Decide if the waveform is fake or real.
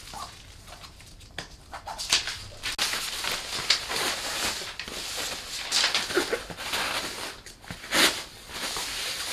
real